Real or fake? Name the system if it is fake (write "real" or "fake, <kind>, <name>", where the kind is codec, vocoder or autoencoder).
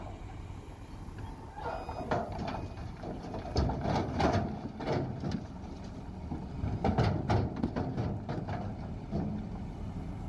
real